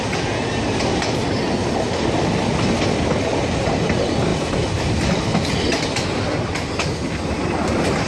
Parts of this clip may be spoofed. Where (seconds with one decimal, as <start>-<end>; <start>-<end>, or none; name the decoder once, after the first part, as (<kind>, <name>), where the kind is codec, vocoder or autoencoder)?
1.6-2.2 (vocoder, BigVGAN v2)